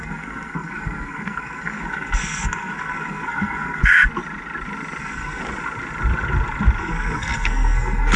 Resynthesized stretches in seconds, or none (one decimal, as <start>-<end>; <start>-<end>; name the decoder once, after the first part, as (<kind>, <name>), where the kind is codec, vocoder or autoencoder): 0.0-3.8 (codec, SNAC); 5.0-5.4; 6.8-8.2